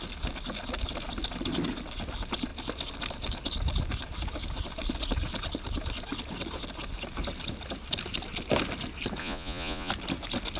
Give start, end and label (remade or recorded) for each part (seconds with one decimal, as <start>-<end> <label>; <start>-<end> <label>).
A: 0.0-9.2 recorded; 9.2-9.9 remade; 9.9-10.6 recorded